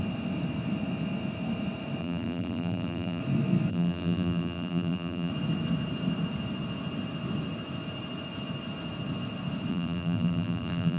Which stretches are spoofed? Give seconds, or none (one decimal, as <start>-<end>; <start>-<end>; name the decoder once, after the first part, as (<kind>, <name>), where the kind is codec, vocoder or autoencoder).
2.0-3.2 (vocoder, BigVGAN v2); 3.7-5.3; 9.7-11.0